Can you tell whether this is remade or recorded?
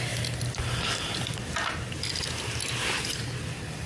recorded